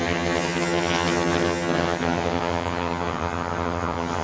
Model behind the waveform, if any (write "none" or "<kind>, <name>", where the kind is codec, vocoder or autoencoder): vocoder, HiFi-GAN